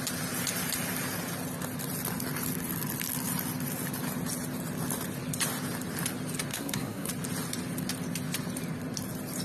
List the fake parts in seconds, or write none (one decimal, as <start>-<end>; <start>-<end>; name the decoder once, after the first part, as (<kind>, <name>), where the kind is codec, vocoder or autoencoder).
6.5-7.1 (codec, SNAC)